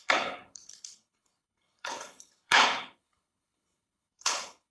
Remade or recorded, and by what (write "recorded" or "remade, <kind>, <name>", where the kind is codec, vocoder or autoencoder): remade, codec, HILCodec